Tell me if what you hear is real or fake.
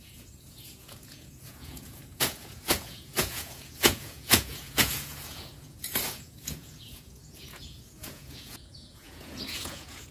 fake